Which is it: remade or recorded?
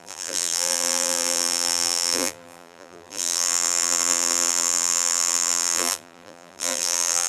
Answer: remade